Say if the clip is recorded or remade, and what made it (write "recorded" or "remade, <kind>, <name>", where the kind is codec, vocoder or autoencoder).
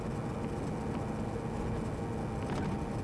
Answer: recorded